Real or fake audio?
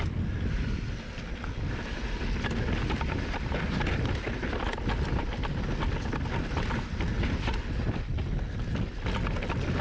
real